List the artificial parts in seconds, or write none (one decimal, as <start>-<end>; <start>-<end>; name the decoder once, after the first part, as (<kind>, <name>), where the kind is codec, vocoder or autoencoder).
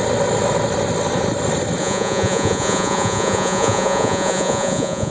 1.8-5.1 (vocoder, Vocos)